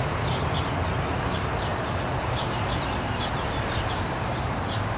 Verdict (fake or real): fake